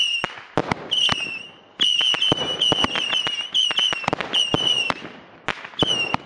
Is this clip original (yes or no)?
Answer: yes